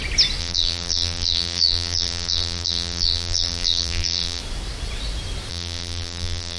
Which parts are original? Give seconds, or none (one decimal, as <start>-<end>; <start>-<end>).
0.0-0.4; 4.4-5.5